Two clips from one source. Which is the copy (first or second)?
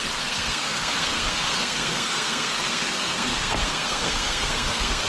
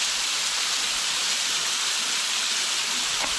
first